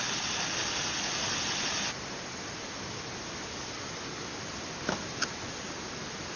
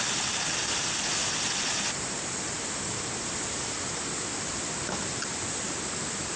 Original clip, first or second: first